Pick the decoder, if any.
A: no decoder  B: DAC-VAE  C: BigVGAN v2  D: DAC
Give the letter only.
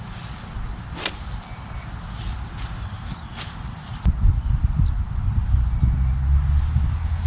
A